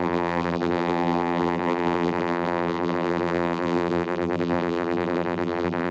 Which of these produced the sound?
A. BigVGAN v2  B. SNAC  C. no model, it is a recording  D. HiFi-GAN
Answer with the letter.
A